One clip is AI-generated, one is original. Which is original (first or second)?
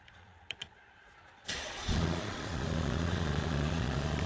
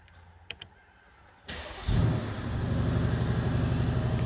second